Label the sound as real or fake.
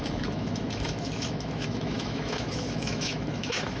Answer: fake